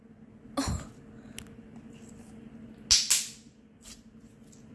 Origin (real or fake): real